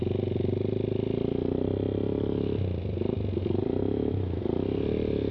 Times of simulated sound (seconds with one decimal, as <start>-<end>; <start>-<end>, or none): 3.8-4.4